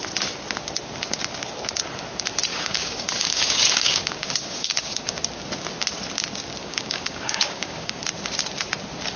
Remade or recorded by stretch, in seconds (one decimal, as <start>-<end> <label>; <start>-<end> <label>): 0.0-2.5 recorded; 2.5-5.2 remade; 5.2-6.6 recorded; 6.6-8.0 remade; 8.0-9.2 recorded